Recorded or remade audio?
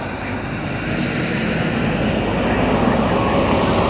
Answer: recorded